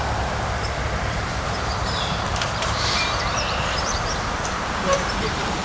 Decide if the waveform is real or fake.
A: fake